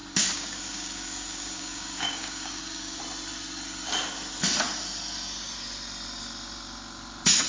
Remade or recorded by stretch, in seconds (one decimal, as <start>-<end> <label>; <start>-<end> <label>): 0.0-3.0 remade; 3.0-7.5 recorded